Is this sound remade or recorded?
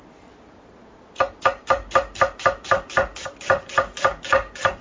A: recorded